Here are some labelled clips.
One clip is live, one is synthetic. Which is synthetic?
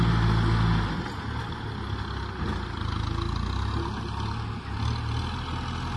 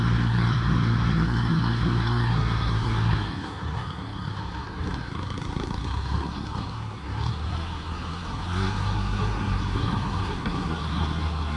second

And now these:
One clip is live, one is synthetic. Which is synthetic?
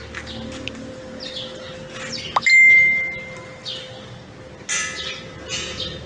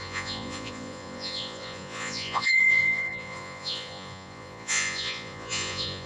second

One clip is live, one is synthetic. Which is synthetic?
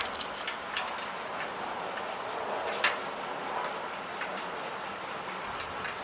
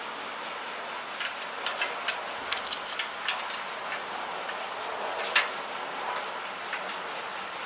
first